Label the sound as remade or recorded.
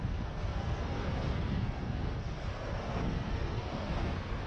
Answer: remade